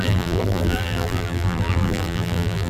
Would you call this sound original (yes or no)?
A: no